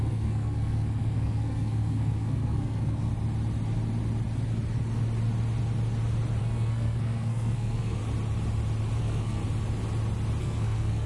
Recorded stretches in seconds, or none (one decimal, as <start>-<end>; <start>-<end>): 3.1-6.4; 8.0-9.0; 9.4-10.4